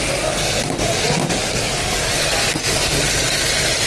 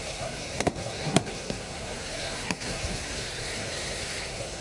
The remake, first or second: second